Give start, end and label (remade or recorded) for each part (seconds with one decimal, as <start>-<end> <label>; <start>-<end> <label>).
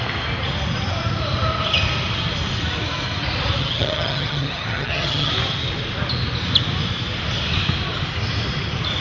0.0-3.6 recorded; 3.6-5.3 remade; 5.3-9.0 recorded